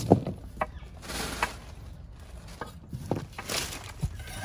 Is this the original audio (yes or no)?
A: yes